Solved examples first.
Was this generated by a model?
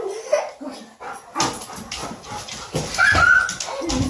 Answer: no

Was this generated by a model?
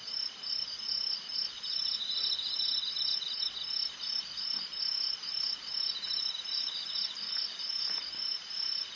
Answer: no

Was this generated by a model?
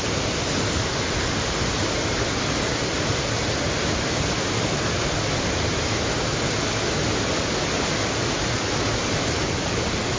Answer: no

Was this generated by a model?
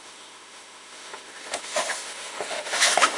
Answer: yes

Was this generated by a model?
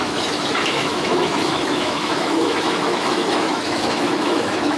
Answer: yes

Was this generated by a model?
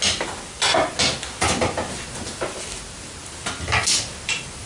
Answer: no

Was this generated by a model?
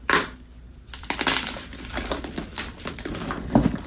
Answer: no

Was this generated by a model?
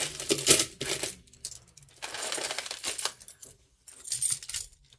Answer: no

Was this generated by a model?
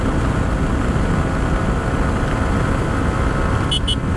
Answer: no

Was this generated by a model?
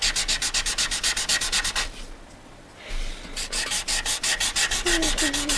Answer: no